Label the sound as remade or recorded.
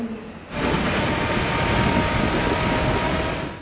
recorded